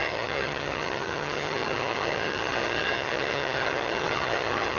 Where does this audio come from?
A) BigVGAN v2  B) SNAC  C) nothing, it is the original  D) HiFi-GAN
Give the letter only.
D